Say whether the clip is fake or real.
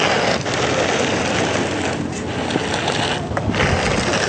real